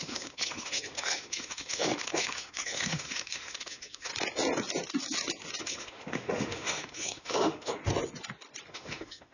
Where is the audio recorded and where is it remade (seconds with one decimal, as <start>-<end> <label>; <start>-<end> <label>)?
0.0-4.1 remade; 4.1-5.6 recorded; 5.6-7.8 remade; 7.8-8.7 recorded; 8.7-9.3 remade